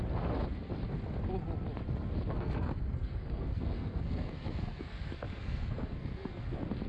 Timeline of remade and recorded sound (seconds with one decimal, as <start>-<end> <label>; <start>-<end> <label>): 0.0-2.3 recorded; 2.3-6.4 remade; 6.4-6.9 recorded